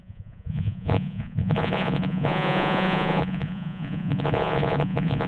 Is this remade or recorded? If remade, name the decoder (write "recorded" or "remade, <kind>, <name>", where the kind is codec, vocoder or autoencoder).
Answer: remade, vocoder, Vocos